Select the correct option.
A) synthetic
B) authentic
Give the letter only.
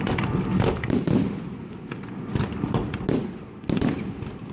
B